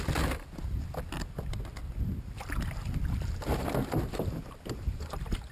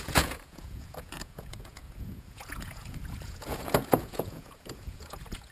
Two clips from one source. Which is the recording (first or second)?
first